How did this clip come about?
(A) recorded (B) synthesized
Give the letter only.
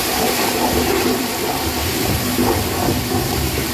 B